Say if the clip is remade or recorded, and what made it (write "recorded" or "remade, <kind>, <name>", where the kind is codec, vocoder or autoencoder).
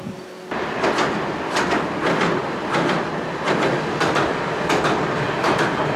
recorded